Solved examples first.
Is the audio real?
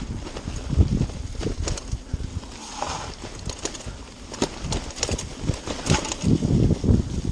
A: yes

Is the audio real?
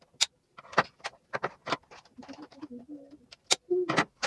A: yes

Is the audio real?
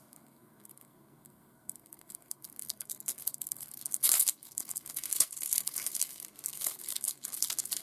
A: no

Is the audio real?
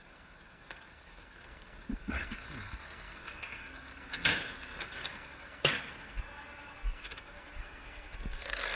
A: no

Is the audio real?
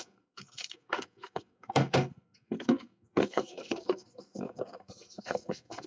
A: no